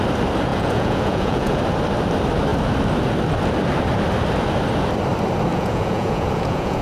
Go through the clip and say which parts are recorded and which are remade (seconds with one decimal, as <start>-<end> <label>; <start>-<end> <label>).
0.0-0.5 recorded; 0.5-1.6 remade; 1.6-5.5 recorded; 5.5-6.8 remade